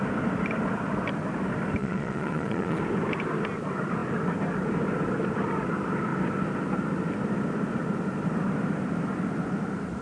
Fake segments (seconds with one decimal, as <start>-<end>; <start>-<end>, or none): 1.8-2.8